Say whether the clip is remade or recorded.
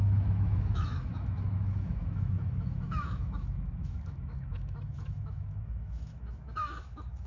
remade